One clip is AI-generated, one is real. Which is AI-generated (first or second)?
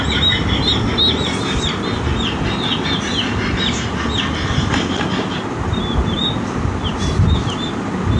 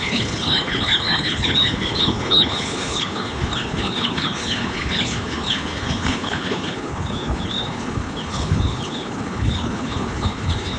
second